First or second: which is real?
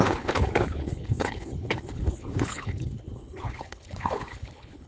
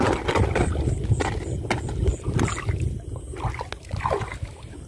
second